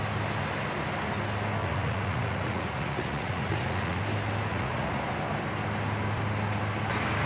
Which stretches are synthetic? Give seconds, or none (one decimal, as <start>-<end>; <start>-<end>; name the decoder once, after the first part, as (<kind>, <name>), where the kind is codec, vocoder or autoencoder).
1.6-4.0 (vocoder, Vocos); 4.5-5.0